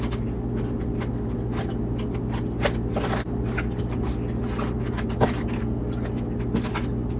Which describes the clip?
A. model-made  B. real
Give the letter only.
B